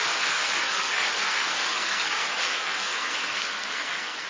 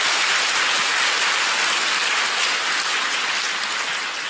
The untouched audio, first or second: second